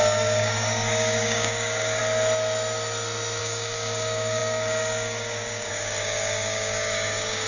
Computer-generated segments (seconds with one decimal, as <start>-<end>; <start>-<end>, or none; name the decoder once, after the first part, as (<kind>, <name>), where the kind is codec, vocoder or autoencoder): 0.0-2.0 (codec, DAC); 3.4-7.5